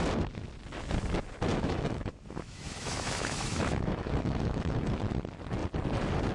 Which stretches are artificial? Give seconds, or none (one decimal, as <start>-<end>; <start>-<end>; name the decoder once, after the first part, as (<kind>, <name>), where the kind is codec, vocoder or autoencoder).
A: 1.5-4.9 (autoencoder, DAC-VAE)